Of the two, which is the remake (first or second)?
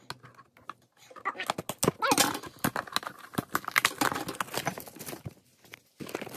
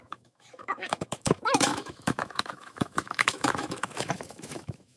second